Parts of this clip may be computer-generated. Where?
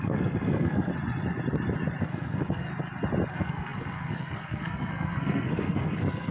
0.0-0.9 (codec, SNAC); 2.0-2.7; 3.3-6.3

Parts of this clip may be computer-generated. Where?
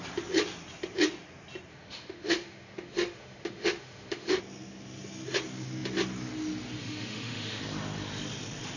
1.7-4.4 (autoencoder, DAC-VAE); 6.8-7.6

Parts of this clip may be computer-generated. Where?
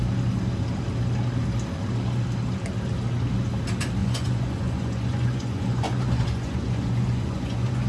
4.0-7.9 (vocoder, Vocos)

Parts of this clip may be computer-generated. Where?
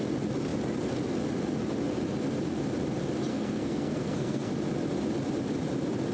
3.3-4.5 (codec, SNAC)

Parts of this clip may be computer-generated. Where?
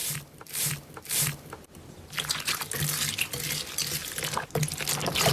none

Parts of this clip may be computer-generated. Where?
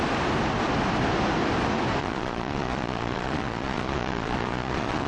2.0-5.1 (vocoder, Vocos)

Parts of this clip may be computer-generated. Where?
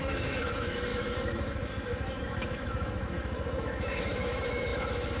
0.0-5.2 (autoencoder, DAC-VAE)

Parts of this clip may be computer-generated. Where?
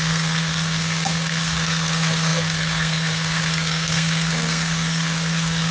0.0-5.7 (codec, SNAC)